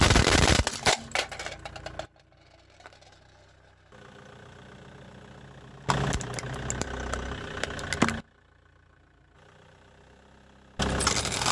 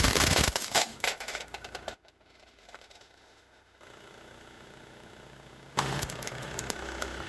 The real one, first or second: first